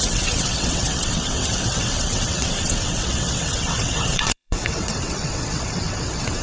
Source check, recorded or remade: remade